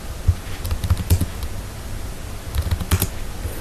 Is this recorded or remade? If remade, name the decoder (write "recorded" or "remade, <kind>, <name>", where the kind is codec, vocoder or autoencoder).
recorded